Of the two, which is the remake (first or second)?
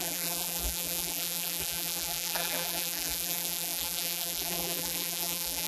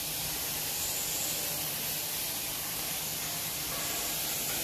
first